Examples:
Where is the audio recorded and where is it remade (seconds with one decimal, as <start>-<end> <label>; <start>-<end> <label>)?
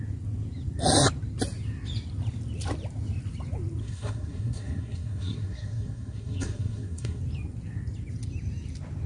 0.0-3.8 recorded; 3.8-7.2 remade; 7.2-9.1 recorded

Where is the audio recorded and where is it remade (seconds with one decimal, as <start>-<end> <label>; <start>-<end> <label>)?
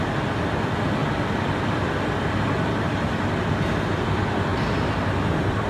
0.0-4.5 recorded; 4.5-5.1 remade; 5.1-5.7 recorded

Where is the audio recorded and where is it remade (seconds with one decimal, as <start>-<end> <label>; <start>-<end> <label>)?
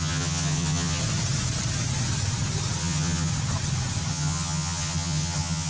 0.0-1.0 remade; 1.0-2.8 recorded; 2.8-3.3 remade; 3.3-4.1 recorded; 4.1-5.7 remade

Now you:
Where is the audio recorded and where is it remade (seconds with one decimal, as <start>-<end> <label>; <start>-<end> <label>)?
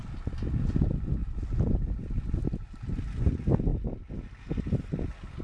0.0-5.4 recorded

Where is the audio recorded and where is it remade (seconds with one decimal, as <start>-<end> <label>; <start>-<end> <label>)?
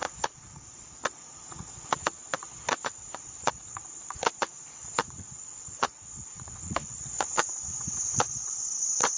0.0-9.2 remade